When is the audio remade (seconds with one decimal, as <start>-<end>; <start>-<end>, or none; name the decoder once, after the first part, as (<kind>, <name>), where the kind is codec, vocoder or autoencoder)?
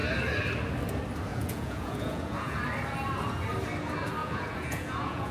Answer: 1.3-2.6 (vocoder, Vocos); 4.2-5.3